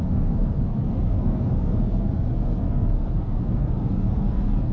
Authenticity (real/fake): fake